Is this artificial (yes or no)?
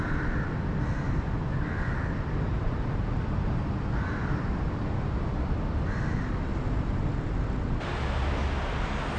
no